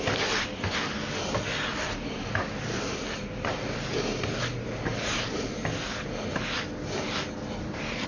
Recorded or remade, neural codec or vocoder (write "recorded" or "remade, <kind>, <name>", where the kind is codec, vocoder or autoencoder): recorded